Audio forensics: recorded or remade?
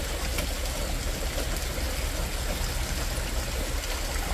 recorded